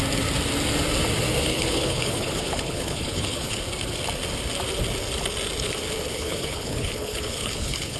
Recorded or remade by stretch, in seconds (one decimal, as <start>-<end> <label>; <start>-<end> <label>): 0.0-1.5 recorded; 1.5-3.6 remade; 3.6-6.1 recorded; 6.1-8.0 remade